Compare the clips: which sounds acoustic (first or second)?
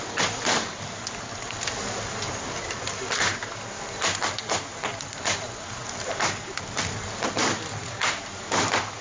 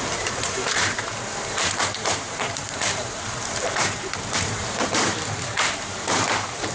first